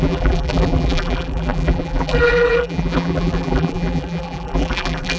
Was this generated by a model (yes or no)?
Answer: yes